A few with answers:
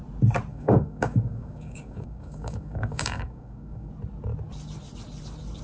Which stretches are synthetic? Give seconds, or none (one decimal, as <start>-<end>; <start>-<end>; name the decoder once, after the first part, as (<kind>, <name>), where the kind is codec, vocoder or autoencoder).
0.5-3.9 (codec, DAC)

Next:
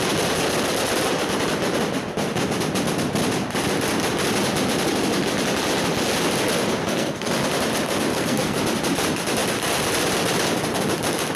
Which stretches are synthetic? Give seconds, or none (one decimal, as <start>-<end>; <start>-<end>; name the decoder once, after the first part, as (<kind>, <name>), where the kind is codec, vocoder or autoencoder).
6.8-7.3 (codec, SNAC); 8.1-8.6

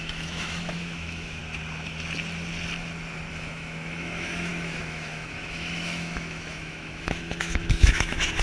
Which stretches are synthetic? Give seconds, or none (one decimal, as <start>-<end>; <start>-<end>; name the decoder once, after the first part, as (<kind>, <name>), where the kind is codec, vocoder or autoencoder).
0.0-1.4 (autoencoder, DAC-VAE); 3.3-8.4